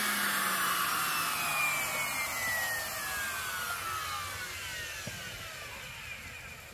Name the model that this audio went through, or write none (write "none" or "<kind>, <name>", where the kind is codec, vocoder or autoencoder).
none